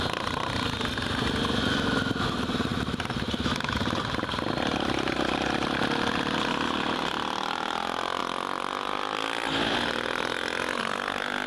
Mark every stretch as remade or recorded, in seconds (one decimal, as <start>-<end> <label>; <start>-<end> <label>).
0.0-11.5 recorded